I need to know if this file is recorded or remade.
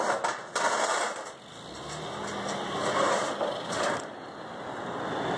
recorded